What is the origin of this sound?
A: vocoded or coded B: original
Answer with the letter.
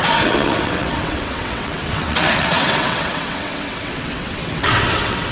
A